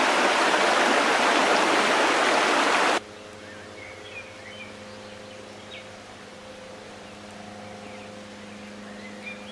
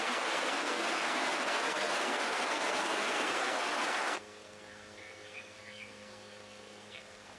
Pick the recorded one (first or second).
first